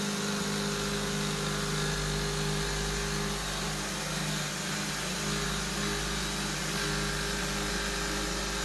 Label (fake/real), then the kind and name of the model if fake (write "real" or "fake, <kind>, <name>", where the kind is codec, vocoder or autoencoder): real